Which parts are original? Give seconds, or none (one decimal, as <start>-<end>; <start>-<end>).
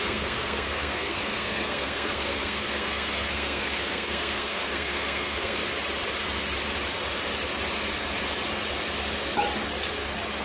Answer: 5.6-10.4